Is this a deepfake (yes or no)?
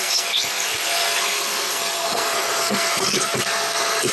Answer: yes